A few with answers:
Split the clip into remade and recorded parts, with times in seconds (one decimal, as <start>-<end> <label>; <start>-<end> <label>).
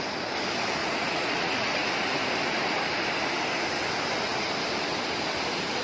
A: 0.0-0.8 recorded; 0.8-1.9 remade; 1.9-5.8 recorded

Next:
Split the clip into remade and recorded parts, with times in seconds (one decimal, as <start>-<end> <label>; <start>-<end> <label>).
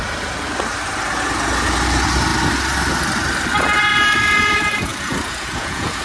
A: 0.0-4.9 recorded; 4.9-6.0 remade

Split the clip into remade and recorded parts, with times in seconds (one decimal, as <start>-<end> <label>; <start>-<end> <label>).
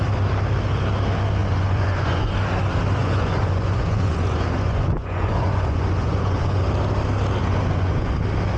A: 0.0-1.4 recorded; 1.4-2.3 remade; 2.3-3.0 recorded; 3.0-6.6 remade; 6.6-7.4 recorded; 7.4-8.1 remade; 8.1-8.6 recorded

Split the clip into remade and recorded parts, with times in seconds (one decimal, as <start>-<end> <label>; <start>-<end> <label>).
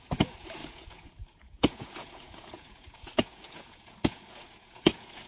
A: 0.0-5.3 remade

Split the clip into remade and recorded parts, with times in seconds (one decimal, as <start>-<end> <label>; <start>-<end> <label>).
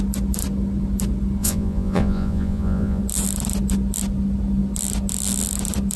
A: 0.0-1.4 recorded; 1.4-3.0 remade; 3.0-6.0 recorded